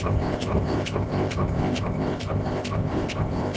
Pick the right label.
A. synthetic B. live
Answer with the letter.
A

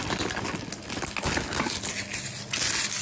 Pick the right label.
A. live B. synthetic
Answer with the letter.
A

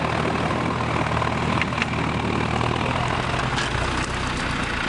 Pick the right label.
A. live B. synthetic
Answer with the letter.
A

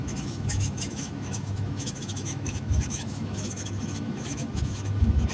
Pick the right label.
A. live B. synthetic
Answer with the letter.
B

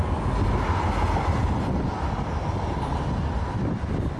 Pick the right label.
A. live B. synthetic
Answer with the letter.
A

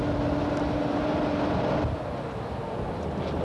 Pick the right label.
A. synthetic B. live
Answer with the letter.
B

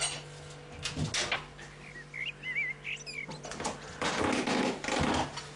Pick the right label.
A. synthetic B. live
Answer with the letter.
B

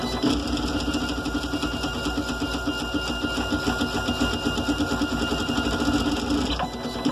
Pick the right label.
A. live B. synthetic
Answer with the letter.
A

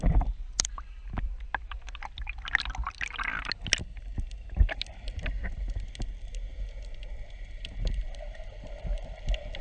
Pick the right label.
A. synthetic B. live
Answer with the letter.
B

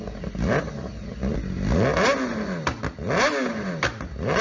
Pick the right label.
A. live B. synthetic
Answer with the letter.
A